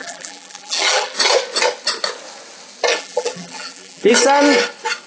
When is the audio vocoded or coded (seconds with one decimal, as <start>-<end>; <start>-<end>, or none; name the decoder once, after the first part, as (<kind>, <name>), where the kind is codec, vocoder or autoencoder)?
0.0-1.2 (vocoder, BigVGAN v2); 2.9-4.1